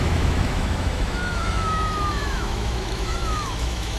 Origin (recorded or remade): remade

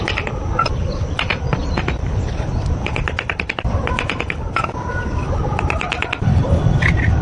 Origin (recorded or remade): recorded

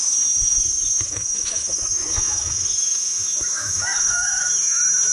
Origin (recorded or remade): remade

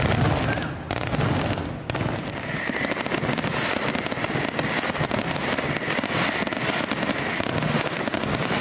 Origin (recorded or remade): recorded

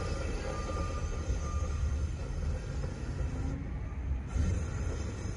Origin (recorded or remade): recorded